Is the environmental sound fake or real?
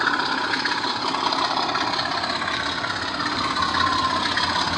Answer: real